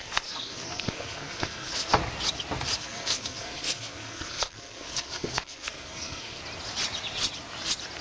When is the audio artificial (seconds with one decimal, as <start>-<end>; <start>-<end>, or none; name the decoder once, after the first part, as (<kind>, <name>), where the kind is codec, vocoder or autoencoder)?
0.0-2.0 (codec, SNAC); 2.8-6.4